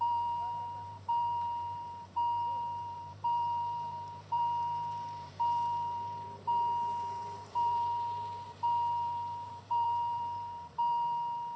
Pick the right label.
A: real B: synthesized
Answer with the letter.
B